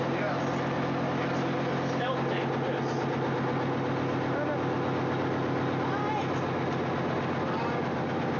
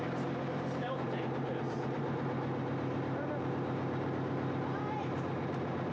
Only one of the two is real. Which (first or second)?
first